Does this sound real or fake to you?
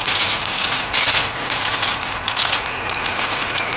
fake